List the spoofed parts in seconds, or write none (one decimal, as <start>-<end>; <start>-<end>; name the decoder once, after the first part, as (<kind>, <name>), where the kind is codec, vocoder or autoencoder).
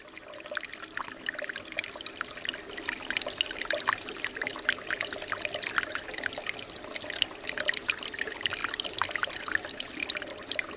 none